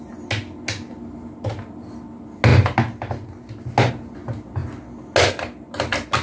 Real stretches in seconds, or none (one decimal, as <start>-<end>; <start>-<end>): 0.0-6.2

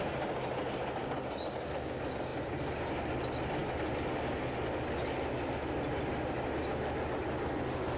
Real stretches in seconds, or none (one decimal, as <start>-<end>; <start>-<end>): 0.0-8.0

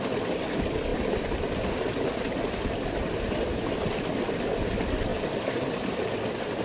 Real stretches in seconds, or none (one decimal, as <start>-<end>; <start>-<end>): 0.0-5.1; 5.9-6.6

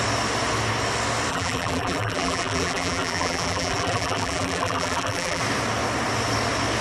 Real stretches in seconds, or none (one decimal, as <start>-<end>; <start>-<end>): 0.0-1.3; 5.4-6.8

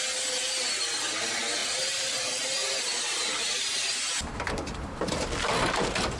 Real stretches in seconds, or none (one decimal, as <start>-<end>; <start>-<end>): 0.0-1.6; 5.3-6.2

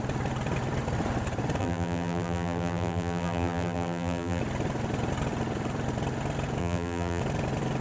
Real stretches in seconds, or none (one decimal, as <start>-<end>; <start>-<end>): 0.0-1.6; 4.4-6.6; 7.2-7.8

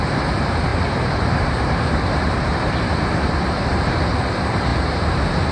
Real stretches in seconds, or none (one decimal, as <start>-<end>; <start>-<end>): none

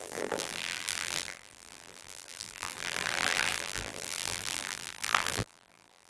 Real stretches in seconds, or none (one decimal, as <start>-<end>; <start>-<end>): none